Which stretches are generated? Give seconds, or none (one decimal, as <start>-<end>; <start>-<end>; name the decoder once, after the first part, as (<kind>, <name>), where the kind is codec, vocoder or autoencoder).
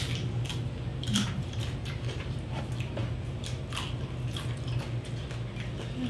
0.9-2.6 (vocoder, BigVGAN v2)